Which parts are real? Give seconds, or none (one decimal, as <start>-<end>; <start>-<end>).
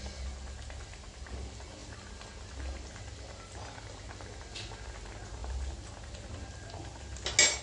0.0-7.6